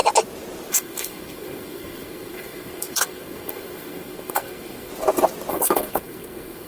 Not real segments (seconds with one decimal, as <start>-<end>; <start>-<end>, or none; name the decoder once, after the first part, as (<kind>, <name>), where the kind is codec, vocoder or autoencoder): 0.7-4.9 (codec, SNAC); 5.5-6.7